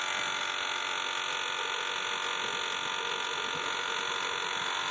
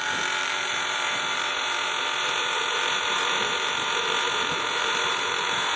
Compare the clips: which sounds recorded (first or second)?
first